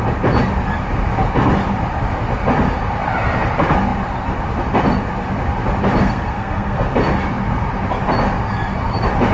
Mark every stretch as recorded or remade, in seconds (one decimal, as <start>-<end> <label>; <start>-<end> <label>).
0.0-6.0 recorded; 6.0-6.9 remade; 6.9-9.3 recorded